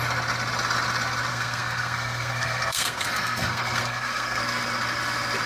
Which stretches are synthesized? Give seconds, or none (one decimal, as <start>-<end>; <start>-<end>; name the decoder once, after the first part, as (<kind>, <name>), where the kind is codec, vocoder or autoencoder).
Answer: 1.3-4.4 (codec, SNAC)